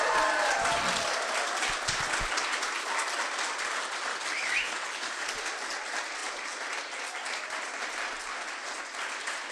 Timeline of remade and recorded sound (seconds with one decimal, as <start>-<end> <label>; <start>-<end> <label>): 0.0-4.1 recorded; 4.1-5.3 remade; 5.3-9.5 recorded

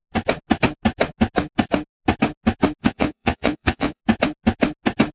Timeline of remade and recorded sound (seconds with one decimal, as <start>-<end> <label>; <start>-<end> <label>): 0.0-2.8 recorded; 2.8-4.0 remade; 4.0-5.1 recorded

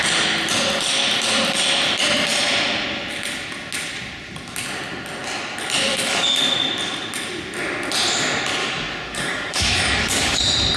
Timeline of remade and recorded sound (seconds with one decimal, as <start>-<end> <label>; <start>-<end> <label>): 0.0-5.9 recorded; 5.9-6.4 remade; 6.4-8.6 recorded; 8.6-10.4 remade; 10.4-10.8 recorded